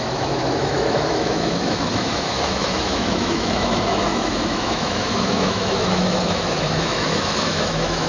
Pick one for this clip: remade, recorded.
remade